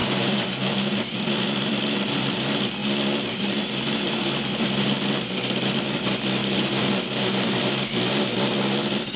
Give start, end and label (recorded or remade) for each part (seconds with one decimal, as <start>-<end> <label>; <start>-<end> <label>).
0.0-0.9 remade; 0.9-6.4 recorded; 6.4-6.9 remade; 6.9-9.2 recorded